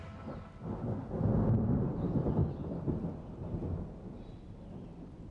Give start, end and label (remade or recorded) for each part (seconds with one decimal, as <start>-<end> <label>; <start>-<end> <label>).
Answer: 0.0-5.3 recorded